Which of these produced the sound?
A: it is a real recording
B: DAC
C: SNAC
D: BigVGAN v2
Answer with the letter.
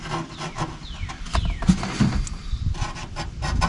A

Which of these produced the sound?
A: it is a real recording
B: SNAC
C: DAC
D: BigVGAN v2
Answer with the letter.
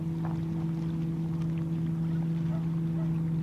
A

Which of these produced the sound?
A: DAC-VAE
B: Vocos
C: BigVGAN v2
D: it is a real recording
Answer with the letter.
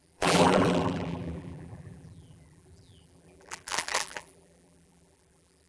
C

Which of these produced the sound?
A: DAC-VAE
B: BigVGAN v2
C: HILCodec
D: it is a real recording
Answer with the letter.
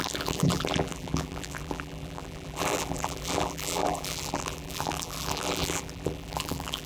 B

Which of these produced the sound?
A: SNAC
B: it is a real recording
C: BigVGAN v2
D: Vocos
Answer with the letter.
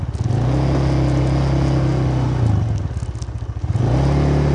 B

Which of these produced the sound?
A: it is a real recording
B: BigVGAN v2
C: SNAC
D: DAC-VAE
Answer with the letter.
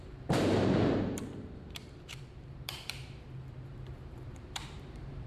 B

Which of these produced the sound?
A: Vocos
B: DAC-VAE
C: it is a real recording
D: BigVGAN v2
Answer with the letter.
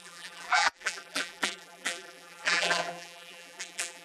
D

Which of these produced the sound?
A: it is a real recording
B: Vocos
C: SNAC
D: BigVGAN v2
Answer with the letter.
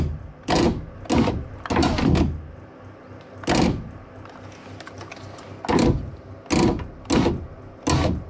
A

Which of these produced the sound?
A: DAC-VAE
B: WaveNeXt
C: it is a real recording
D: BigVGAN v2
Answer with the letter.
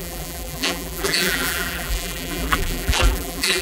D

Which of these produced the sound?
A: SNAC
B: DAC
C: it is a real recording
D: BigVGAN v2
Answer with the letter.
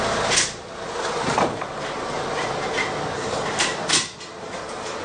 D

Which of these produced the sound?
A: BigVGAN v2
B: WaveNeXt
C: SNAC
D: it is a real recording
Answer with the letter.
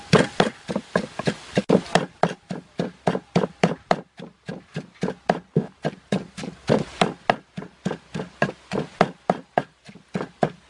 D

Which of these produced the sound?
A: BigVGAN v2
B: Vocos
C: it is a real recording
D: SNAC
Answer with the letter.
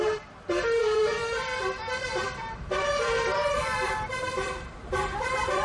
A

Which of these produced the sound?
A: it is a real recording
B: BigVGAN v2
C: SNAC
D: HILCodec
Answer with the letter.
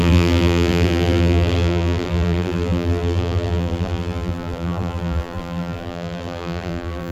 B